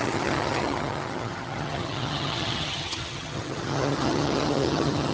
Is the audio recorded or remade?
remade